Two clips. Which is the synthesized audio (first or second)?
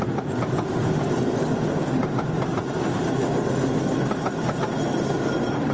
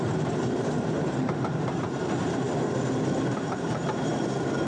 second